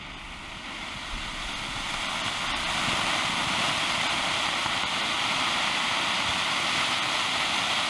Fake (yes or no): no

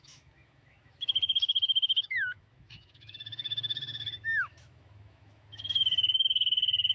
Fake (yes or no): yes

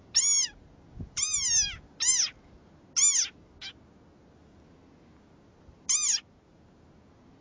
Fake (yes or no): no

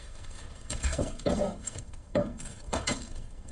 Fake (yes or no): yes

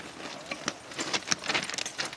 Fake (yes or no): no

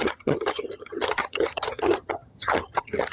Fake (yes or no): yes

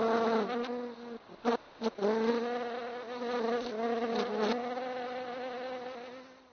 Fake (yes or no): no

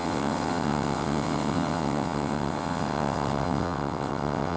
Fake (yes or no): yes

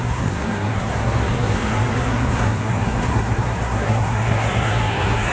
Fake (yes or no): yes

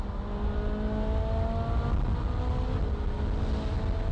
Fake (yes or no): no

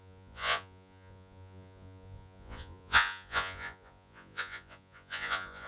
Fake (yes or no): yes